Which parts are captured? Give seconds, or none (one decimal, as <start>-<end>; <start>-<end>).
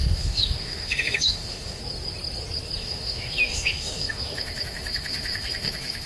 1.8-2.8